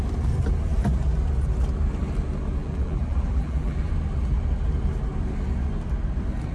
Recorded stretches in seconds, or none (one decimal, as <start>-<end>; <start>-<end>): 0.0-2.6; 3.9-6.5